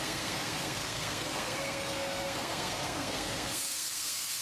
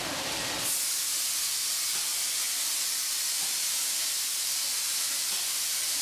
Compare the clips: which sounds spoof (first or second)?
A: first